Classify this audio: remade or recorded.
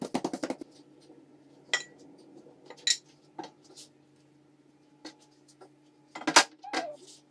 recorded